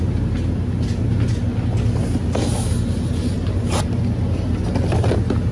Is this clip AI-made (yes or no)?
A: no